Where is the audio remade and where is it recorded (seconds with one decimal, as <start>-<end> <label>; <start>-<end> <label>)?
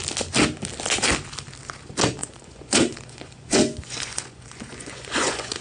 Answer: 0.0-2.2 recorded; 2.2-5.6 remade